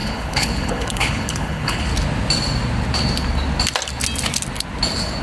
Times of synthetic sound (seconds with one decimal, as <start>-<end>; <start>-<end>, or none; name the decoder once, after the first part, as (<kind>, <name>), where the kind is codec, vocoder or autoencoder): 0.0-1.9 (codec, HILCodec)